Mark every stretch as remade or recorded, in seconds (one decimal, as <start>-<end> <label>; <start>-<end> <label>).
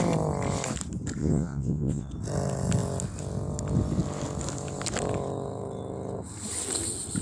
0.0-1.2 recorded; 1.2-2.1 remade; 2.1-7.2 recorded